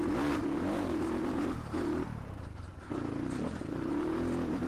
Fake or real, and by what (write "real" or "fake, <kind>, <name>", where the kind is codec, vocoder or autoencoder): fake, vocoder, BigVGAN v2